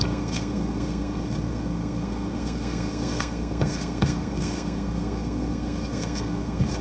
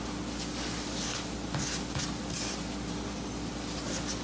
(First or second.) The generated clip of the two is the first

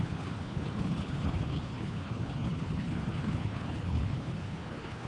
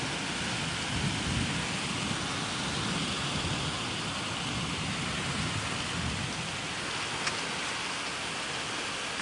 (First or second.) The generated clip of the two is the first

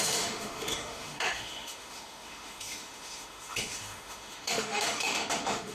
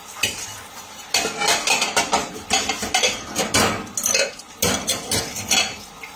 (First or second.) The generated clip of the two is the first